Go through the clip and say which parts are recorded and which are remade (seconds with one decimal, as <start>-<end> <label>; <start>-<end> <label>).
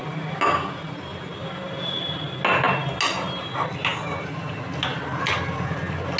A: 0.0-6.2 recorded